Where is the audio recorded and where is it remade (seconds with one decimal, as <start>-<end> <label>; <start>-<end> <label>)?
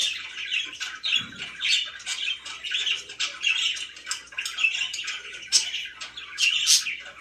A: 0.0-4.1 remade; 4.1-4.5 recorded; 4.5-5.9 remade; 5.9-7.2 recorded